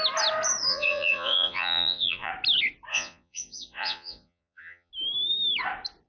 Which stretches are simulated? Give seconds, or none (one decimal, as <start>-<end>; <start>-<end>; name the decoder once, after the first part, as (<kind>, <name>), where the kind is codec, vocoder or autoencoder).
0.7-2.3 (vocoder, Vocos); 2.9-4.9